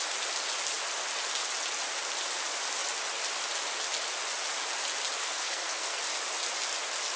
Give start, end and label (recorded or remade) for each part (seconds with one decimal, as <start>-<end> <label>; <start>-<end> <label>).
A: 0.0-5.2 recorded; 5.2-6.0 remade; 6.0-7.2 recorded